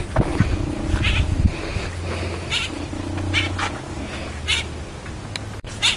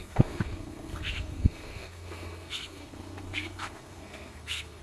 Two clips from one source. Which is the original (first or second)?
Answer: first